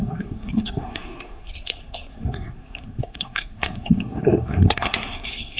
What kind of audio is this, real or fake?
fake